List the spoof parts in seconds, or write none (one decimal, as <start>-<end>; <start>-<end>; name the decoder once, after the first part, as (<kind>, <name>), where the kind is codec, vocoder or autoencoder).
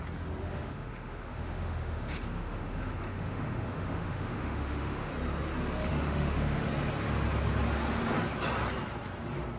0.4-5.1 (autoencoder, DAC-VAE); 5.9-6.7